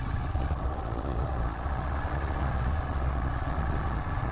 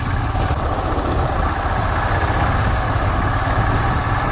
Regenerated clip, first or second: first